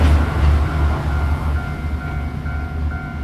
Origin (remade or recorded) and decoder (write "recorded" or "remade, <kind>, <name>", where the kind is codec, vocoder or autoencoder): recorded